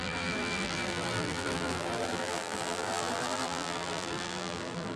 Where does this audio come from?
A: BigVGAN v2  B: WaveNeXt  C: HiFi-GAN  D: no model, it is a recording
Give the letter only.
A